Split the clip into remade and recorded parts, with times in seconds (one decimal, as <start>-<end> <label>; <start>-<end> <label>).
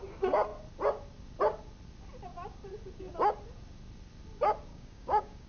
0.0-4.7 recorded; 4.7-5.5 remade